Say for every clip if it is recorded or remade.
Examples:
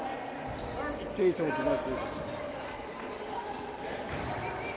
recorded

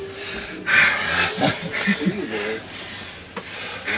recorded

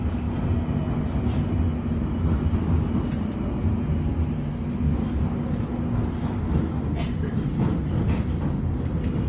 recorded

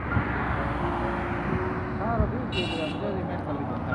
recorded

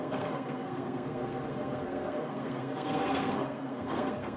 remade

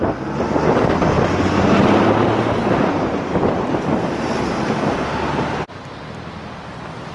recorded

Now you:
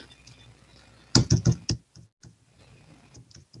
recorded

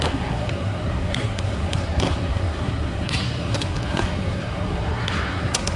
remade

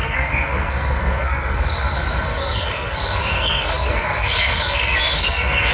remade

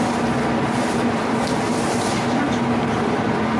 recorded